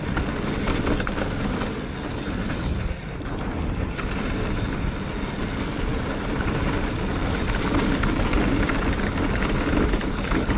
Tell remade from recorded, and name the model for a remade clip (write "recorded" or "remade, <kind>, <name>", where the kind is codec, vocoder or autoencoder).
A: recorded